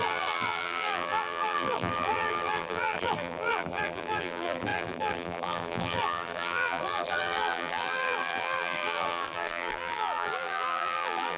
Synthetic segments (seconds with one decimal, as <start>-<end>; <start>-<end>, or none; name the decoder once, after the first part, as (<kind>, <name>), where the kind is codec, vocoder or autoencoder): 0.0-11.4 (vocoder, BigVGAN v2)